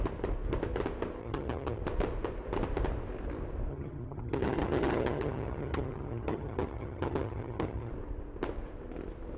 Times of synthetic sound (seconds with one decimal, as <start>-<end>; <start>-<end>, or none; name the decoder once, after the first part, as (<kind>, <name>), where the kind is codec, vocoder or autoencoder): 1.2-1.8 (vocoder, HiFi-GAN); 3.7-7.9